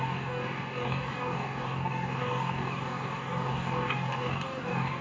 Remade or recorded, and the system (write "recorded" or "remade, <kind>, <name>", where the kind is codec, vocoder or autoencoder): remade, codec, DAC